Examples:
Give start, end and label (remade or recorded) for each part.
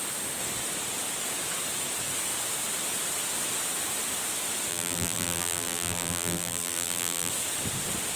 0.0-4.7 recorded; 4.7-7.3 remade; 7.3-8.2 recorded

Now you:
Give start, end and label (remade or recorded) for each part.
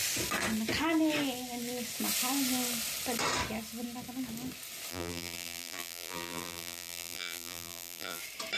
0.0-4.9 recorded; 4.9-8.2 remade; 8.2-8.6 recorded